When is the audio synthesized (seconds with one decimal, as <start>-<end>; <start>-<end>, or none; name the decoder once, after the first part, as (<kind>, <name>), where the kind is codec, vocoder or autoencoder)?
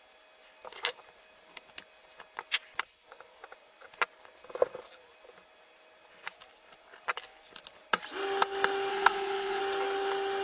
8.9-9.6 (codec, HILCodec)